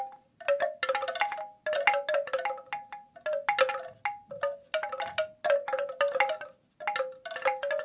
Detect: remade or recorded recorded